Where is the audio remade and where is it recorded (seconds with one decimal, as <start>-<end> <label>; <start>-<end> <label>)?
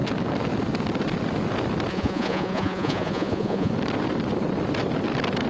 0.0-1.9 recorded; 1.9-3.7 remade; 3.7-5.5 recorded